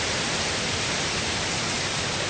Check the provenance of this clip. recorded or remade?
recorded